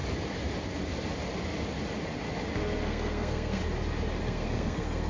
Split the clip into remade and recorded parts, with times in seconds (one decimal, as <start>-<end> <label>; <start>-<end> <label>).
0.0-2.8 recorded; 2.8-3.6 remade; 3.6-4.2 recorded; 4.2-5.1 remade